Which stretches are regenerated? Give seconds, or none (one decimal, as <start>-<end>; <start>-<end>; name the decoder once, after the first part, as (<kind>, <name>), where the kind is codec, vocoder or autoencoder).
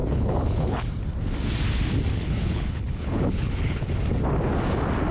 0.0-0.9 (codec, HILCodec); 2.1-3.9